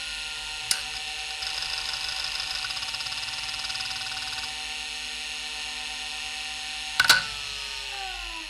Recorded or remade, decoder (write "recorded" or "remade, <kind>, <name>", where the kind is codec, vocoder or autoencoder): recorded